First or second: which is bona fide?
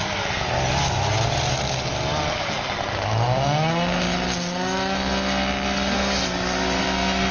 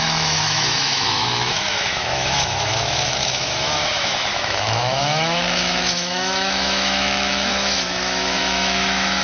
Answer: first